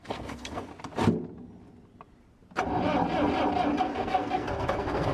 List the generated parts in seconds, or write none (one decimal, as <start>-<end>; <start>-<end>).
0.0-0.7; 3.8-5.1